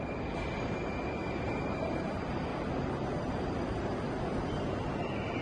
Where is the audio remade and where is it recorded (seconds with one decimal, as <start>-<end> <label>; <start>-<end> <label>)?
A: 0.0-5.4 recorded